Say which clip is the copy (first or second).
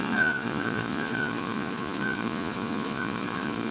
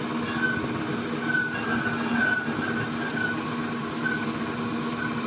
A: first